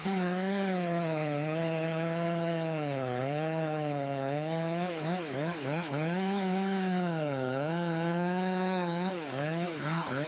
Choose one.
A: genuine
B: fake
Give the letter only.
B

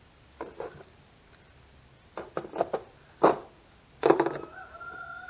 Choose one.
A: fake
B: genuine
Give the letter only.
B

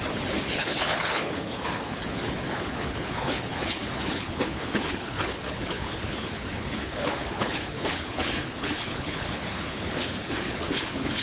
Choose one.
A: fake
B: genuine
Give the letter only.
A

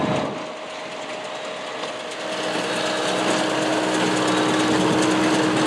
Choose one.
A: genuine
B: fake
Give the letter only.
A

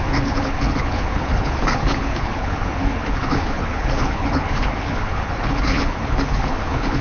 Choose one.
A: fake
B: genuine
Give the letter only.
A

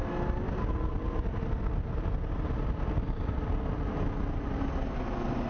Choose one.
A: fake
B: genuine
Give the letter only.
B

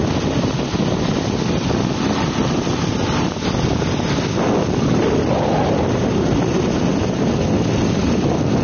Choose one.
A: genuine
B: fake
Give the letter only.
A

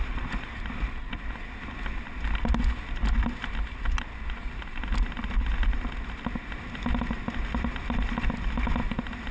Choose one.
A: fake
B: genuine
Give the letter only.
B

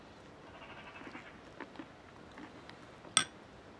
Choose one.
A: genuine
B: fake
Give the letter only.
A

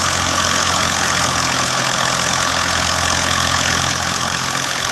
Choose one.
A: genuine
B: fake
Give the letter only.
B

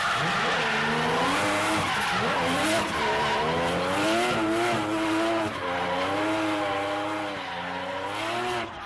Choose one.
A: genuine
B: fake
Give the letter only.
A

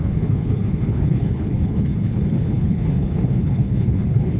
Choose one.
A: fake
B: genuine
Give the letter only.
A